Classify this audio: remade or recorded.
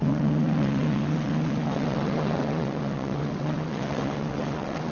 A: remade